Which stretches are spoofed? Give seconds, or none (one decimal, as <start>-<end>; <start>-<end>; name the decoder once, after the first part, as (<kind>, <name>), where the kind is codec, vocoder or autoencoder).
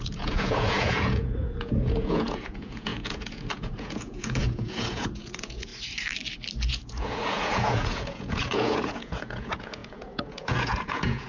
0.0-5.7 (vocoder, Vocos); 6.7-11.3